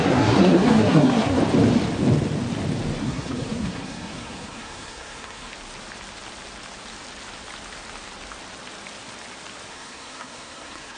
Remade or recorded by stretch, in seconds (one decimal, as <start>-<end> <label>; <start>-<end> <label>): 0.0-1.4 remade; 1.4-3.0 recorded; 3.0-5.5 remade; 5.5-9.7 recorded; 9.7-11.0 remade